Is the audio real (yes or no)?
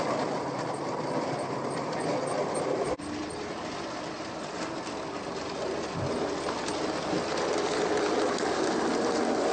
yes